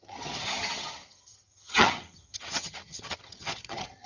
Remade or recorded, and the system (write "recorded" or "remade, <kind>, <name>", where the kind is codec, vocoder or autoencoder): remade, vocoder, HiFi-GAN